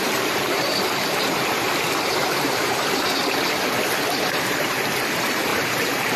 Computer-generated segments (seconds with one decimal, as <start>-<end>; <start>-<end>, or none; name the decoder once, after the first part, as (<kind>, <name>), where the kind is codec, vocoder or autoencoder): 0.0-3.2 (vocoder, BigVGAN v2); 4.3-6.2